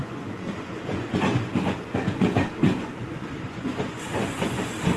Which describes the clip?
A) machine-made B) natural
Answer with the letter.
A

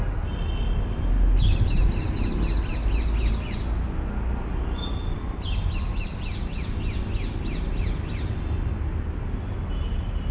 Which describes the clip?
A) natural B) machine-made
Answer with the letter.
A